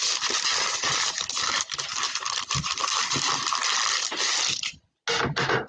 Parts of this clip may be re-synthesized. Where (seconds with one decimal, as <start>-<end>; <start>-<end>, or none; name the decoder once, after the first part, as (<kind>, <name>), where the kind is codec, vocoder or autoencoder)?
none